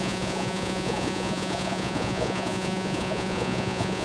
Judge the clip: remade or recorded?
remade